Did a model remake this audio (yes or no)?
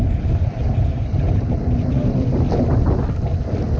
no